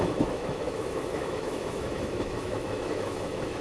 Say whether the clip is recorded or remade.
remade